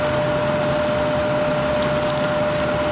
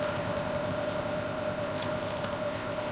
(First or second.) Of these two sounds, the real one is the first